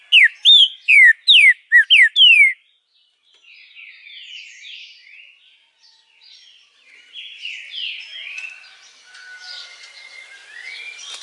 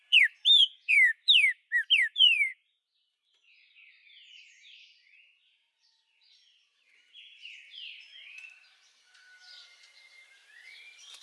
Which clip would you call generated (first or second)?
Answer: second